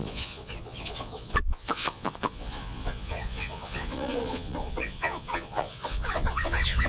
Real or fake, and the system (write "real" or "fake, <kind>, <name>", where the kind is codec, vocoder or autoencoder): fake, vocoder, Vocos